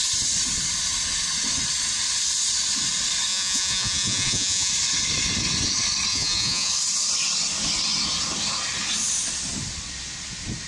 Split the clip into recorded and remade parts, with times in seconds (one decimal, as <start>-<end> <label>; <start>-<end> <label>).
0.0-3.3 recorded; 3.3-4.7 remade; 4.7-6.1 recorded; 6.1-6.7 remade; 6.7-10.7 recorded